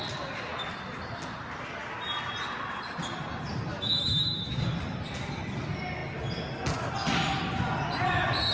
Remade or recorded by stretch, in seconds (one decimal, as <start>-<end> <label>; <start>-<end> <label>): 0.0-3.7 recorded; 3.7-4.6 remade; 4.6-8.5 recorded